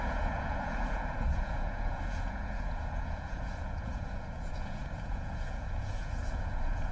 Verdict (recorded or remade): remade